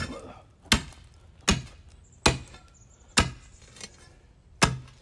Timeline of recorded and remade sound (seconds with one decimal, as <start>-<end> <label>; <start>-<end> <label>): 0.0-5.0 recorded

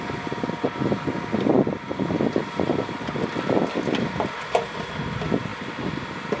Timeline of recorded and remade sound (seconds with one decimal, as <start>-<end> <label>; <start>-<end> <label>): 0.0-6.4 recorded

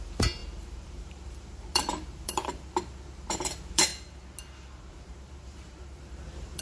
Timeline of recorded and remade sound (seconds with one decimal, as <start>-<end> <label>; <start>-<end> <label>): 0.0-2.4 remade; 2.4-3.3 recorded; 3.3-3.9 remade; 3.9-4.9 recorded; 4.9-6.6 remade

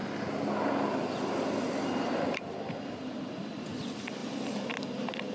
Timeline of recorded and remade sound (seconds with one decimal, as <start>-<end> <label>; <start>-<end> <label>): 0.0-2.3 recorded; 2.3-5.3 remade

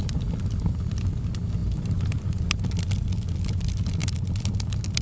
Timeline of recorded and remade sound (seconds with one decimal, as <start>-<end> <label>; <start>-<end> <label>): 0.0-0.9 remade; 0.9-4.0 recorded; 4.0-5.0 remade

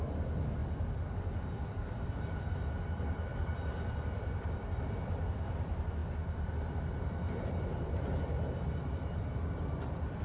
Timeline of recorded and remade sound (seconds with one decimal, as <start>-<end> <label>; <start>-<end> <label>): 0.0-0.6 remade; 0.6-1.1 recorded; 1.1-10.2 remade

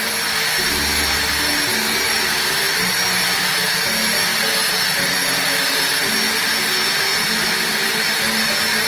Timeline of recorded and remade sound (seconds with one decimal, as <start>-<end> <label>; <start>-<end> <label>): 0.0-7.1 recorded; 7.1-7.7 remade; 7.7-8.9 recorded